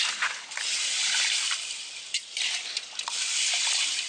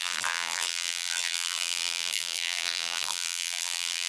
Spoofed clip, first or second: second